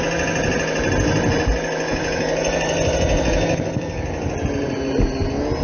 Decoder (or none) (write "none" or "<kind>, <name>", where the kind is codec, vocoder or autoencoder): none